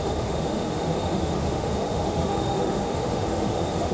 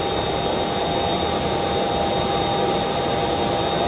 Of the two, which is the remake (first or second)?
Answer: first